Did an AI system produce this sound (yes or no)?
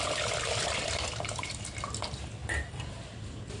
yes